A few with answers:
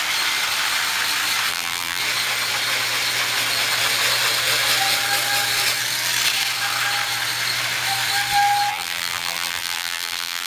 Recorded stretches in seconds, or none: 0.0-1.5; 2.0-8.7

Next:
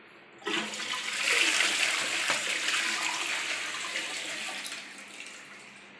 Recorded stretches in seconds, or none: 0.0-6.0

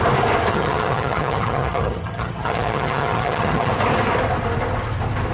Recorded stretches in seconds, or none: 0.0-0.5; 3.7-5.3

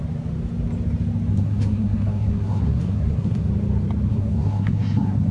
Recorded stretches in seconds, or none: 0.0-1.3; 3.5-4.1